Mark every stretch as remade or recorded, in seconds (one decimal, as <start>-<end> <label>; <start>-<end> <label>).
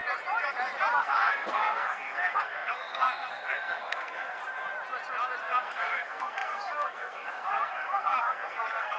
0.0-1.0 recorded; 1.0-4.4 remade; 4.4-5.4 recorded; 5.4-9.0 remade